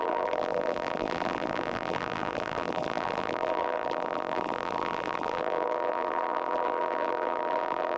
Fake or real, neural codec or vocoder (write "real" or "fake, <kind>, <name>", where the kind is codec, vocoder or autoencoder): fake, vocoder, BigVGAN v2